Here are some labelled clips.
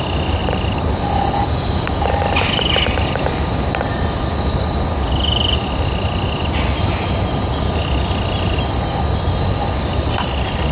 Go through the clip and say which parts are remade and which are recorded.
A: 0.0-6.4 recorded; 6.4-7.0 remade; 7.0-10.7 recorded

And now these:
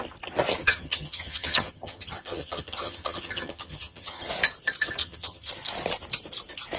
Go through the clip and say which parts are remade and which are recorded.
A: 0.0-0.6 recorded; 0.6-4.3 remade; 4.3-5.0 recorded; 5.0-5.5 remade; 5.5-6.8 recorded

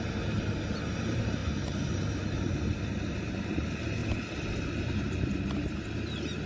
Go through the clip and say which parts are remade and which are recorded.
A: 0.0-4.0 remade; 4.0-4.8 recorded; 4.8-6.5 remade